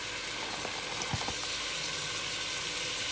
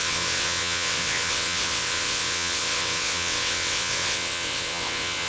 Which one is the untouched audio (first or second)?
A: first